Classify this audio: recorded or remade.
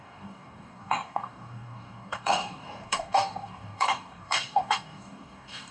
remade